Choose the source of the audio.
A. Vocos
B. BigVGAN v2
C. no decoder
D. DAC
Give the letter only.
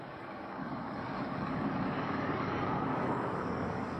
D